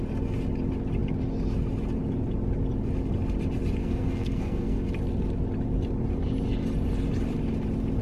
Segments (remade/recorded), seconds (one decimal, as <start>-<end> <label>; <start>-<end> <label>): 0.0-3.8 recorded; 3.8-4.9 remade; 4.9-8.0 recorded